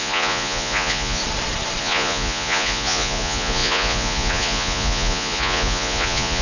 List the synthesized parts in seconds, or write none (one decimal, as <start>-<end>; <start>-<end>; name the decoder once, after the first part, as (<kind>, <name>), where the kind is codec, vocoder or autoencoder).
0.0-1.2 (vocoder, Vocos); 1.8-6.4